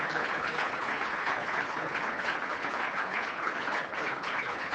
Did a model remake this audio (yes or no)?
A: yes